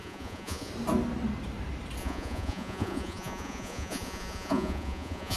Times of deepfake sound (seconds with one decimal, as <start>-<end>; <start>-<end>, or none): 0.0-0.7; 2.0-5.4